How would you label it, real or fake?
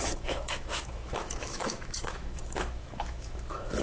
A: fake